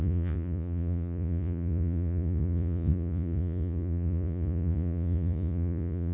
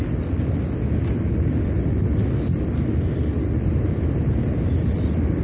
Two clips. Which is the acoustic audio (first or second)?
second